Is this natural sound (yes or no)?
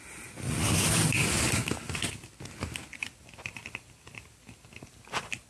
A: yes